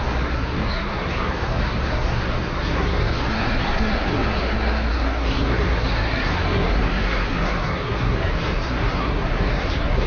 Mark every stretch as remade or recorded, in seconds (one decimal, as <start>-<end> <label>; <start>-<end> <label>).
0.0-10.1 remade

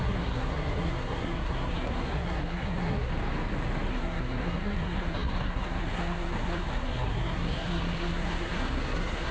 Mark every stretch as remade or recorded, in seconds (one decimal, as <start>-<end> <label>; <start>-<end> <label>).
0.0-3.1 remade; 3.1-3.9 recorded; 3.9-9.3 remade

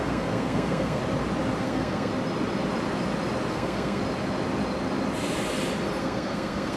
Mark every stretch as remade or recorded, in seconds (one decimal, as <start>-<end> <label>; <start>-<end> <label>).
0.0-1.0 remade; 1.0-1.6 recorded; 1.6-2.1 remade; 2.1-3.5 recorded; 3.5-4.0 remade; 4.0-6.0 recorded; 6.0-6.8 remade

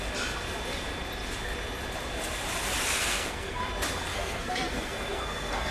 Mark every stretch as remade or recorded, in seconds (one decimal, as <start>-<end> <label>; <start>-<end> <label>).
0.0-3.0 recorded; 3.0-3.6 remade; 3.6-4.1 recorded; 4.1-5.7 remade

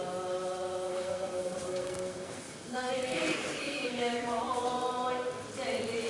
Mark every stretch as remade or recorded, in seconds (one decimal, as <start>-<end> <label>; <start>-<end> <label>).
0.0-0.9 recorded; 0.9-4.6 remade; 4.6-6.1 recorded

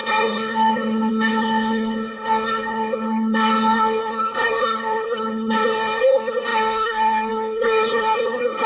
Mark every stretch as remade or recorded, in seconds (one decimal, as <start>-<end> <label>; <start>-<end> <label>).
0.0-8.7 remade